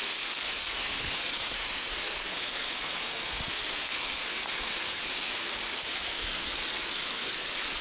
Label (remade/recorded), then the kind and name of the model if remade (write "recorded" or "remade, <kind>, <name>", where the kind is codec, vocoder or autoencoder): remade, codec, SNAC